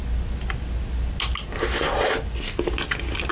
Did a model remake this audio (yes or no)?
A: no